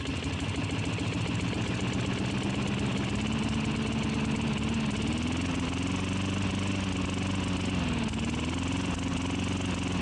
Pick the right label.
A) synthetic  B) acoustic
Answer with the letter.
B